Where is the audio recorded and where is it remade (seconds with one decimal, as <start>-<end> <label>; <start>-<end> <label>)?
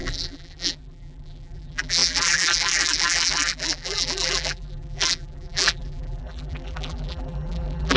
0.0-8.0 remade